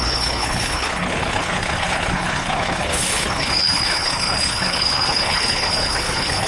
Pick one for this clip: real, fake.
fake